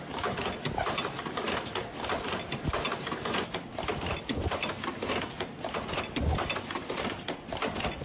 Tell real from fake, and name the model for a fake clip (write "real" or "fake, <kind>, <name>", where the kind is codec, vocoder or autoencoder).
real